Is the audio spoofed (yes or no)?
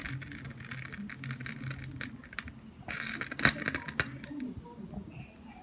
no